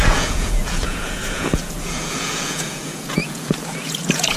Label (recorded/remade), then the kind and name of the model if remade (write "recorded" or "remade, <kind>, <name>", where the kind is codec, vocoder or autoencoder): remade, vocoder, Vocos